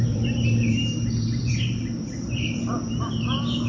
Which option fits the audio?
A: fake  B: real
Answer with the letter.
A